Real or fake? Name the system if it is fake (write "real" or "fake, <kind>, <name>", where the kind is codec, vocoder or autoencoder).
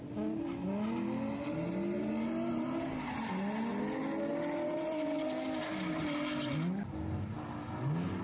real